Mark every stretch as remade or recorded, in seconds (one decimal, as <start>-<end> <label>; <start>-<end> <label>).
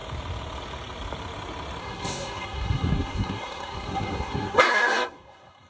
0.0-1.8 recorded; 1.8-5.7 remade